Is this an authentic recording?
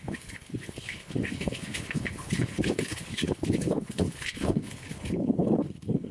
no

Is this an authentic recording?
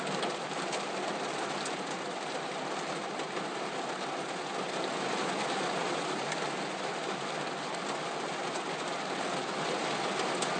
yes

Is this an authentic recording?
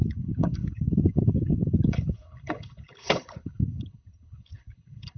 no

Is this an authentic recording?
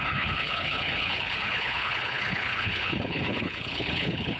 no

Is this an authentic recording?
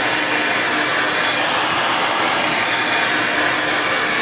yes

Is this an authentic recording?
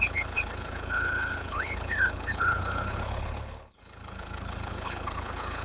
no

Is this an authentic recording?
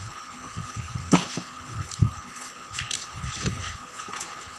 no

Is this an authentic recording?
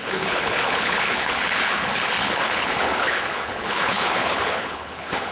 no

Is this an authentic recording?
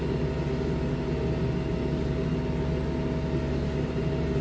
yes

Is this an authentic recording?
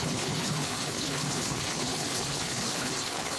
no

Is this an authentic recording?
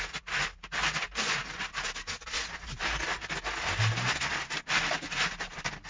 yes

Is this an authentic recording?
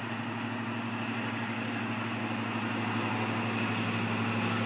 yes